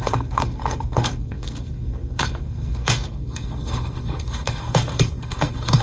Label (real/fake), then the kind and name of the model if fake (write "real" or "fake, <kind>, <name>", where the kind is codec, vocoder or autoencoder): fake, codec, SNAC